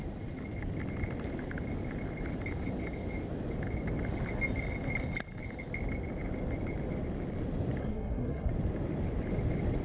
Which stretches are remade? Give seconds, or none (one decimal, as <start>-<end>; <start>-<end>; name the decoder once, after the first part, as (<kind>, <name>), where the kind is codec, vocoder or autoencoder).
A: 7.8-8.5 (codec, SNAC)